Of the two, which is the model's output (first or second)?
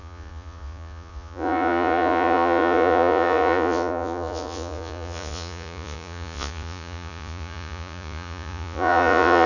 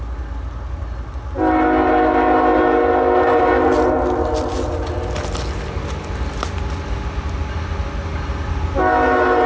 first